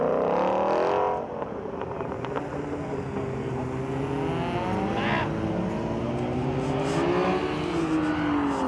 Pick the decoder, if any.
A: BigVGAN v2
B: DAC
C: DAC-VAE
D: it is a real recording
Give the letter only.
D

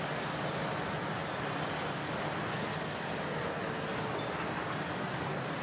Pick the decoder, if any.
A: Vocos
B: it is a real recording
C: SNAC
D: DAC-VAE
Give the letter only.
B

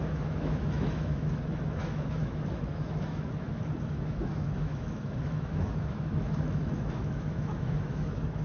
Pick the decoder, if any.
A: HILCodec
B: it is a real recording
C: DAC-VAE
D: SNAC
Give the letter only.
C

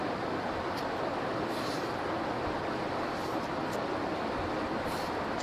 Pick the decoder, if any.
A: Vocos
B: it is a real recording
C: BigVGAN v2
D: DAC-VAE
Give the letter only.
B